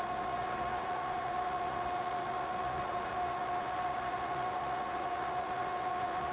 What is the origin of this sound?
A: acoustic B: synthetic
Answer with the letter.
B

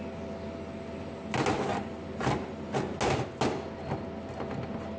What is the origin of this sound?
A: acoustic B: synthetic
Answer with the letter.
A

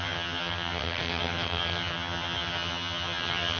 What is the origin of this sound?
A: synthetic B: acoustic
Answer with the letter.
A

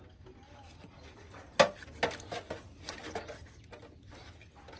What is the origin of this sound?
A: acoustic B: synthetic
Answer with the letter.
A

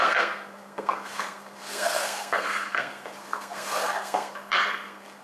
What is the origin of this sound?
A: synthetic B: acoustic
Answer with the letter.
A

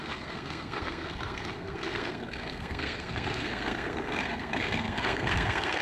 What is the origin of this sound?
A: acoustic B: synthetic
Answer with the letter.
B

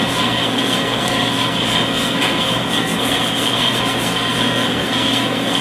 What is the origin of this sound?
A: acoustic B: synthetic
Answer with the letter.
B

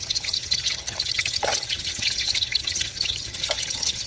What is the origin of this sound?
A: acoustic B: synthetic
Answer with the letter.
B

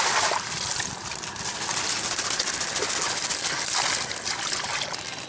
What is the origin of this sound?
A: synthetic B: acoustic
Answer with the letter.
B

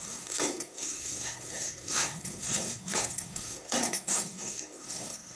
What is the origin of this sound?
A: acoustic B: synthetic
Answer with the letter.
B